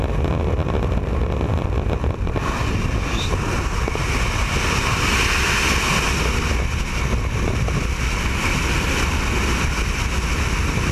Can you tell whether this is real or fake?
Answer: real